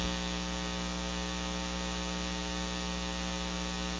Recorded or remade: recorded